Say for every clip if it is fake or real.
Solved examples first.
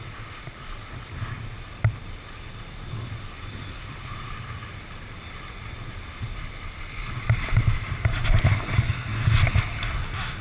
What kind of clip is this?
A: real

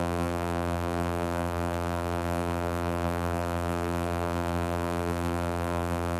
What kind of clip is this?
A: fake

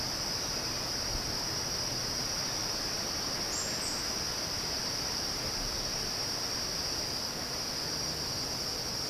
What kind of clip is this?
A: real